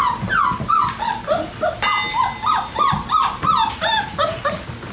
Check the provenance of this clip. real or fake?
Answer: real